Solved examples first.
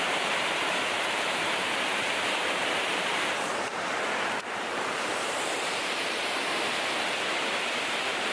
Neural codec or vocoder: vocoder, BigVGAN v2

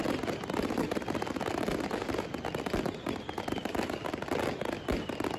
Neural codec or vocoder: none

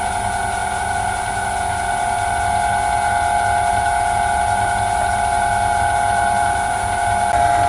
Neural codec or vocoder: none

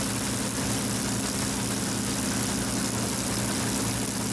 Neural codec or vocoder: none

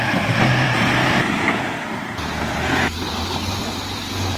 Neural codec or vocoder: vocoder, BigVGAN v2